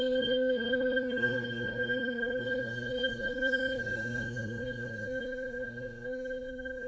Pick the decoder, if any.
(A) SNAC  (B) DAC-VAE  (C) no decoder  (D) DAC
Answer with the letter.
A